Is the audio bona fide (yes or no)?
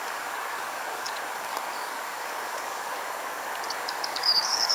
no